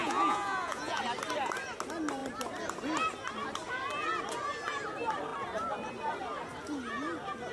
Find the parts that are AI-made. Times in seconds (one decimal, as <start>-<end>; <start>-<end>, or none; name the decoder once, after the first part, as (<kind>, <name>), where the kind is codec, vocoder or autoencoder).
0.0-1.0 (vocoder, Vocos)